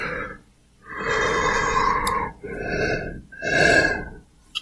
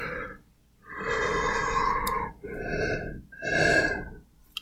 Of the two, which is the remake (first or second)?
first